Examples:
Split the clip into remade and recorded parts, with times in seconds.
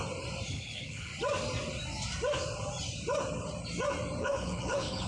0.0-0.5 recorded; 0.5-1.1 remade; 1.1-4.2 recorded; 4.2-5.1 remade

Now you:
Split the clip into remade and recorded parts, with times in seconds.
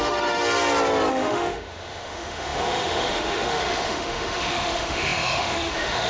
0.0-0.4 remade; 0.4-1.1 recorded; 1.1-6.1 remade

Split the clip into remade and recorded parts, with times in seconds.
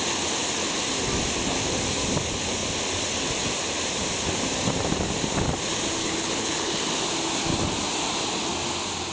0.0-6.0 recorded; 6.0-6.8 remade; 6.8-9.1 recorded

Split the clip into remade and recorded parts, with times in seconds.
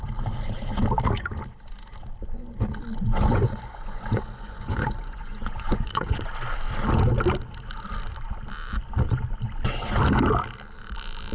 0.0-3.1 recorded; 3.1-6.3 remade; 6.3-11.3 recorded